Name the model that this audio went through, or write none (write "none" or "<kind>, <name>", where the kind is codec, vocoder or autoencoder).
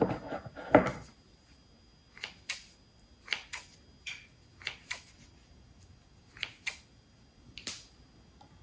none